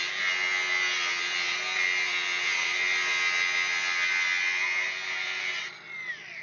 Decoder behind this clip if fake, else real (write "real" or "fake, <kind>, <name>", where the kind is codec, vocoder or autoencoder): real